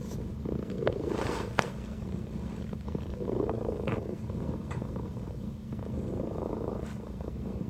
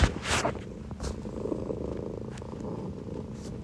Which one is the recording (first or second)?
second